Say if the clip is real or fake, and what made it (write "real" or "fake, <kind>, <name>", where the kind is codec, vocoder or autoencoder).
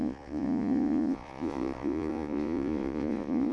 fake, vocoder, Vocos